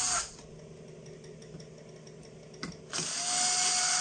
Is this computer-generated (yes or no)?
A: no